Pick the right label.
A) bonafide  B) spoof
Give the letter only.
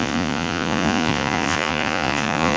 B